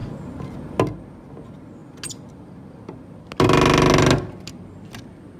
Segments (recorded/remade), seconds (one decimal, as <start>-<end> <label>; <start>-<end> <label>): 0.0-5.4 recorded